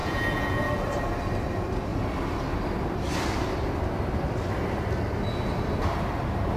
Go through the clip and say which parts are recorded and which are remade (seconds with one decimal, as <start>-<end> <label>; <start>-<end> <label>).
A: 0.0-0.7 remade; 0.7-6.6 recorded